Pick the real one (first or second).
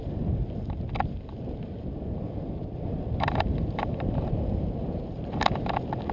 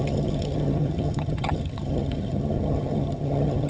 first